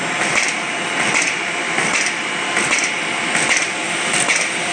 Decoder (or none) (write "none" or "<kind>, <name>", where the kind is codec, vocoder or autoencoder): none